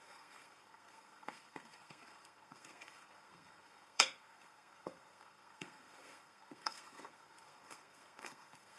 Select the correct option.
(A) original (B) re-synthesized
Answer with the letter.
B